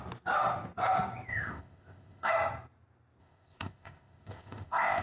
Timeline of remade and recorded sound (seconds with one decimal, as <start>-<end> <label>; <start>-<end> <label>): 0.0-1.3 recorded; 1.3-2.3 remade; 2.3-3.2 recorded; 3.2-5.0 remade